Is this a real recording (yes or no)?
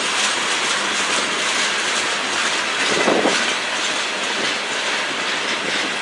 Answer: yes